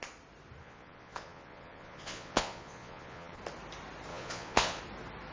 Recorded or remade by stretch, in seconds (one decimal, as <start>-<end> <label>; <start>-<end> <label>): 0.0-0.6 recorded; 0.6-3.4 remade; 3.4-4.1 recorded; 4.1-4.8 remade; 4.8-5.3 recorded

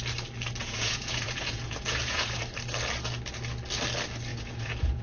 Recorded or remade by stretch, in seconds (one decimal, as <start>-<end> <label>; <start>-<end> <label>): 0.0-0.6 recorded; 0.6-2.4 remade; 2.4-4.3 recorded; 4.3-5.0 remade

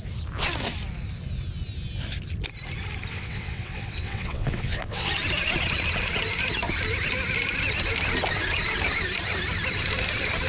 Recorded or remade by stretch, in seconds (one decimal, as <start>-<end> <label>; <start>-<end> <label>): 0.0-3.1 recorded; 3.1-5.1 remade; 5.1-10.5 recorded

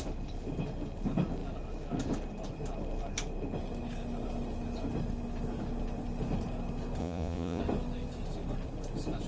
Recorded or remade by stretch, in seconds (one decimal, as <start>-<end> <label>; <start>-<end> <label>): 0.0-7.0 recorded; 7.0-7.6 remade; 7.6-9.3 recorded

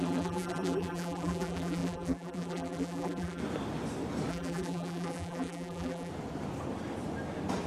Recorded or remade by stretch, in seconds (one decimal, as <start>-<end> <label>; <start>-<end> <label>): 0.0-3.4 remade; 3.4-4.3 recorded; 4.3-6.1 remade; 6.1-7.7 recorded